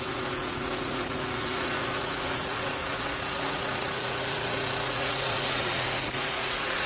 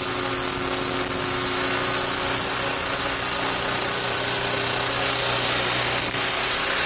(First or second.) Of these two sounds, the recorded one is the second